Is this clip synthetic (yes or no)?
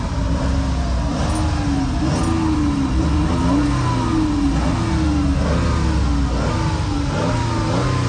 no